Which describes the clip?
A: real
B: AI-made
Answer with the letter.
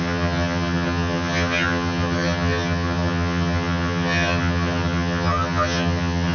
B